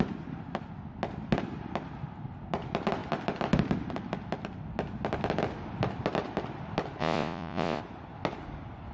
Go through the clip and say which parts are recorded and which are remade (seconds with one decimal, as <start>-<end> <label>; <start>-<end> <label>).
0.0-7.0 recorded; 7.0-7.8 remade; 7.8-8.9 recorded